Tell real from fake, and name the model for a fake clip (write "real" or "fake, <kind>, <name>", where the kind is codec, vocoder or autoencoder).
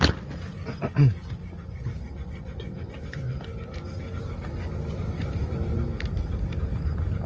real